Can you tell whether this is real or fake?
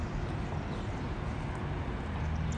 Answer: real